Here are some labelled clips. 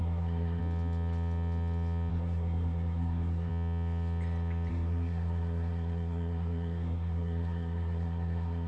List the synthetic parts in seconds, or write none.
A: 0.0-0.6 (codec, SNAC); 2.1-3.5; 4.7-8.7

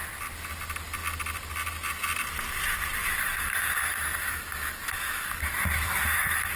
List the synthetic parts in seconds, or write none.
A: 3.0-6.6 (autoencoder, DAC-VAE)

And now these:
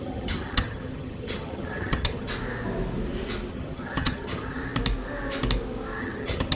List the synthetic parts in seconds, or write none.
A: 0.0-2.3 (vocoder, HiFi-GAN); 3.5-4.6; 6.0-6.5

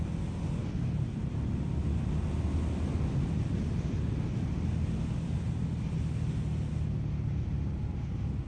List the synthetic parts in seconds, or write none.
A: none

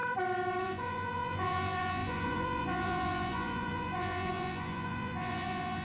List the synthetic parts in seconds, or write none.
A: 0.6-5.8 (vocoder, Vocos)

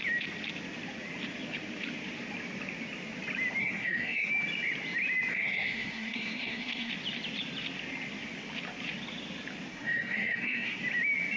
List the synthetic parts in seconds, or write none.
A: 3.6-4.3 (codec, SNAC); 5.3-6.9; 9.7-10.8

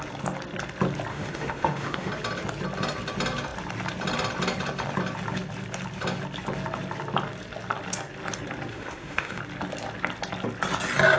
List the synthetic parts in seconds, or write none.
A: 1.1-2.1 (autoencoder, DAC-VAE); 8.7-9.4

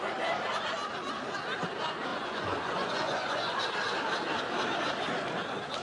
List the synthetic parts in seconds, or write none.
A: 2.1-3.6 (vocoder, Vocos)